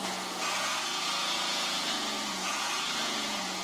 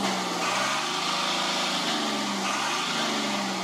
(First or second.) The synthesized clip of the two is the first